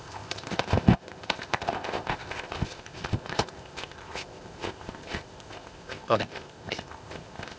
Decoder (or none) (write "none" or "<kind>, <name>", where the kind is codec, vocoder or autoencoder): codec, ZipCodec